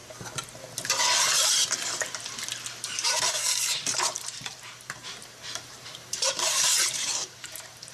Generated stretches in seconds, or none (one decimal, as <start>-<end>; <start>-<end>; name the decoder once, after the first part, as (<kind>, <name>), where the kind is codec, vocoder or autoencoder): 2.8-7.9 (vocoder, BigVGAN v2)